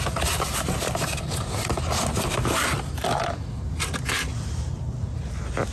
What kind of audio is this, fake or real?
real